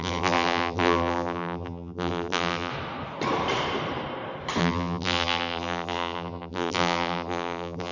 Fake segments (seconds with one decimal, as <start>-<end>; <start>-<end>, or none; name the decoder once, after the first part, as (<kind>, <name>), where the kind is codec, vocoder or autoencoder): 0.0-2.7 (vocoder, BigVGAN v2); 4.6-7.9